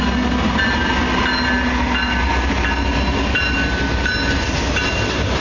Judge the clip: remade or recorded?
recorded